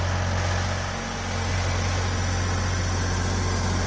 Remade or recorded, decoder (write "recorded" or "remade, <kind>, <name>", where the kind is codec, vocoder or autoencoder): recorded